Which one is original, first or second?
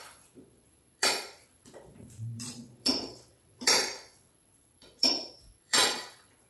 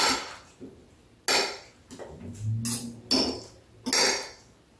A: second